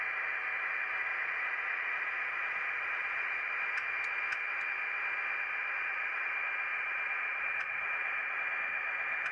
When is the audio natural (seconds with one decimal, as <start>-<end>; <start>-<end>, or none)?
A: 0.0-1.1; 3.4-5.8; 6.3-6.7; 8.4-9.3